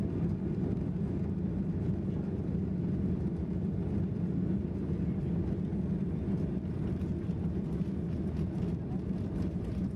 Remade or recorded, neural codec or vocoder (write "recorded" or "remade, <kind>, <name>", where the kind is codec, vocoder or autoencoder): recorded